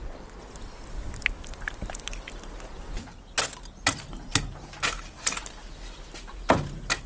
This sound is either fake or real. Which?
real